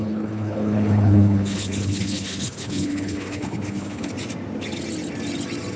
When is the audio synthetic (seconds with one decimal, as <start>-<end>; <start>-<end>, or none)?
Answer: 0.0-4.1